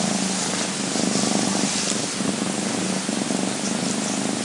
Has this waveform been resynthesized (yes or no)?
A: no